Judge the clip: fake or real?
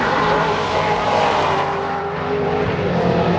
fake